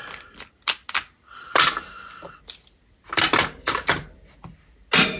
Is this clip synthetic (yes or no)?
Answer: no